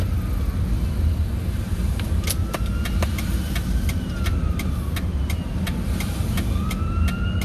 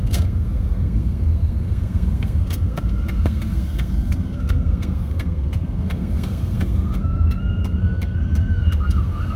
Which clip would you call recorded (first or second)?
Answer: first